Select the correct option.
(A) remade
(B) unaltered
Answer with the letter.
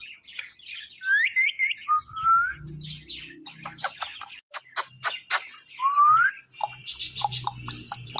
B